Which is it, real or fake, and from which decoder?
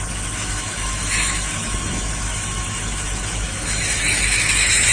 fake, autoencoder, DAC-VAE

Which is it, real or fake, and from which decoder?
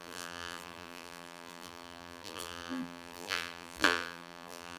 fake, vocoder, BigVGAN v2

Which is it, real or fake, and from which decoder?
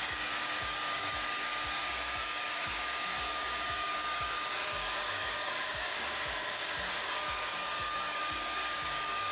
fake, codec, DAC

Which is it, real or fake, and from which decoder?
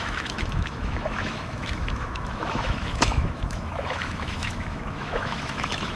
fake, autoencoder, DAC-VAE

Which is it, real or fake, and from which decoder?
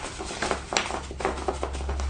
real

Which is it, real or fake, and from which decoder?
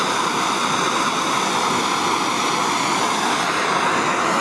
real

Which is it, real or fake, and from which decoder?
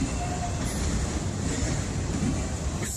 real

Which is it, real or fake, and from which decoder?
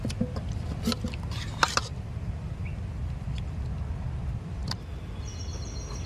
real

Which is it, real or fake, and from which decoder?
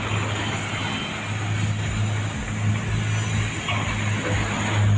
real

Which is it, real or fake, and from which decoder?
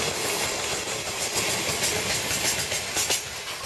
real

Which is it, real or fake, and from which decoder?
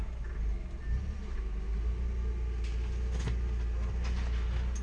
real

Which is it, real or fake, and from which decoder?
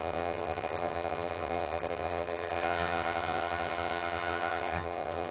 fake, vocoder, HiFi-GAN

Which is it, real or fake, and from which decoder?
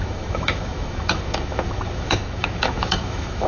fake, autoencoder, DAC-VAE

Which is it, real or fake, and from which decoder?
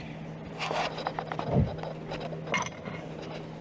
real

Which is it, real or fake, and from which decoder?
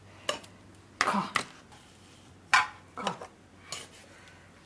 real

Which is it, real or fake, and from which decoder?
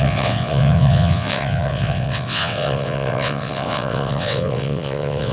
fake, vocoder, WaveNeXt